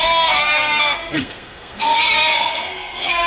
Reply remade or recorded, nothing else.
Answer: remade